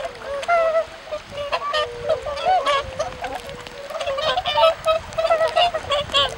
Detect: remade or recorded recorded